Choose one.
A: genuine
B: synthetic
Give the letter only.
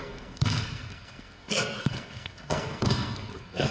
B